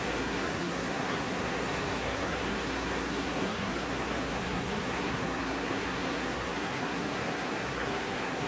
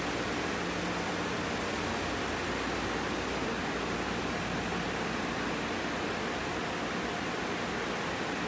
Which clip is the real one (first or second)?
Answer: second